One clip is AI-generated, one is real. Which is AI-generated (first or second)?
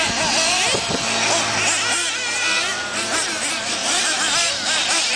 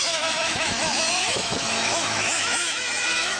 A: second